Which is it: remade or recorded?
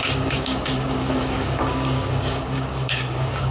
remade